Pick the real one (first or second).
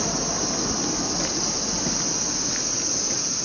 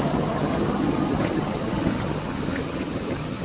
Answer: first